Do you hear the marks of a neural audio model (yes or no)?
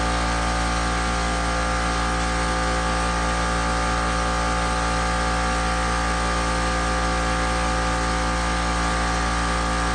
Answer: no